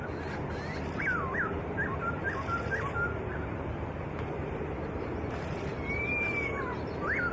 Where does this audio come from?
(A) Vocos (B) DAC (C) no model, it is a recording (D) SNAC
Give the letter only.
C